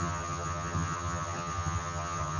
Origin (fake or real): fake